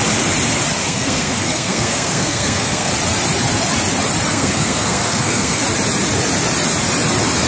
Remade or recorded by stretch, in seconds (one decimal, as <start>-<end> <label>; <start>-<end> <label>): 0.0-0.8 recorded; 0.8-2.9 remade; 2.9-4.3 recorded; 4.3-5.6 remade; 5.6-7.5 recorded